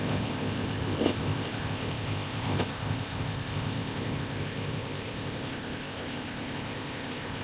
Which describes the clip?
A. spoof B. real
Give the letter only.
A